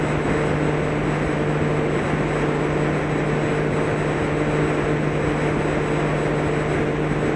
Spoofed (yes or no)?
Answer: no